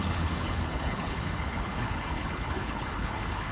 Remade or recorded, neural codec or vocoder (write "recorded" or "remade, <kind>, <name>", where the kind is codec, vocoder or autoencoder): remade, codec, HILCodec